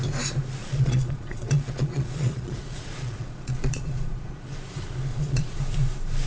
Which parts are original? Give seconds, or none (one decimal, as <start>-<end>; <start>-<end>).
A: 0.0-0.6; 4.3-5.1; 5.6-6.3